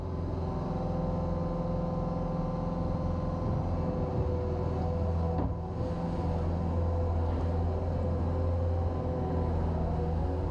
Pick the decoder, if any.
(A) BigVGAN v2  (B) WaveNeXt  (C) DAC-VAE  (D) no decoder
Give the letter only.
D